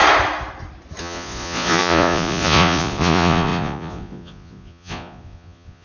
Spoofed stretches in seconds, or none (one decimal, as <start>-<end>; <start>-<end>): 1.0-5.8